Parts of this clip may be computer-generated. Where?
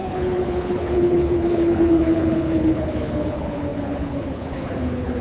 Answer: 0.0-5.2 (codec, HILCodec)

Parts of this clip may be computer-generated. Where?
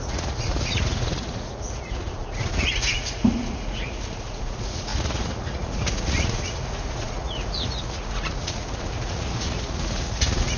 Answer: 0.0-10.6 (vocoder, Vocos)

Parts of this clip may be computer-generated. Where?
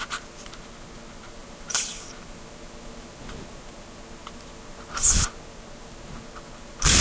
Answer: none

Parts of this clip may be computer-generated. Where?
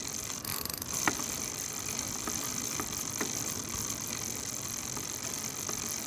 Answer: 0.5-3.1 (vocoder, BigVGAN v2)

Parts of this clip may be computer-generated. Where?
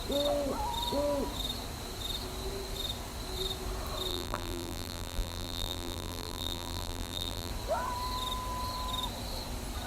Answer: 4.1-7.5 (vocoder, BigVGAN v2)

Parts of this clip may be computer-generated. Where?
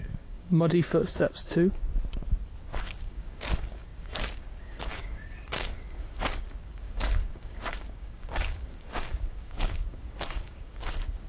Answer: 0.0-1.2 (codec, DAC); 2.6-11.3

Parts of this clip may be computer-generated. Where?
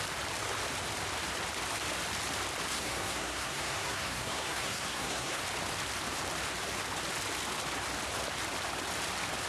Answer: 2.7-5.4 (codec, SNAC)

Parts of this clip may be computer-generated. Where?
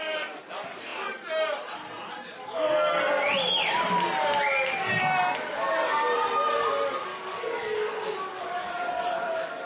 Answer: 7.1-8.7 (codec, DAC)